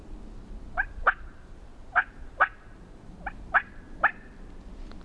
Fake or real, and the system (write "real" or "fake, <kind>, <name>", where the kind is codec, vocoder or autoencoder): real